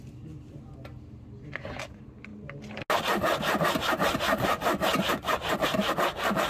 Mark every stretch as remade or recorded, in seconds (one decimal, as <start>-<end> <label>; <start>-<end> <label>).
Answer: 0.0-6.5 recorded